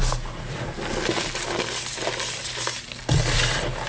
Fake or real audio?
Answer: real